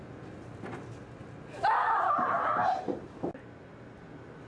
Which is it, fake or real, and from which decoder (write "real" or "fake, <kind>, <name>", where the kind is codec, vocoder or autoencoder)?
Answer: real